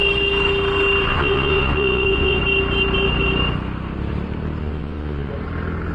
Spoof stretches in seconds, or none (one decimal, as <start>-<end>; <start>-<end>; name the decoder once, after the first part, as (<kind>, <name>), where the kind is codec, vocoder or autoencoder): 1.1-2.4 (vocoder, Vocos); 4.6-5.3